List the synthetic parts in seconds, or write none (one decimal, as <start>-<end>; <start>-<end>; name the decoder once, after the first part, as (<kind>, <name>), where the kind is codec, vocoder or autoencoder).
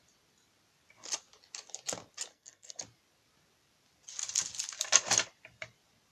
2.3-2.8 (codec, SNAC)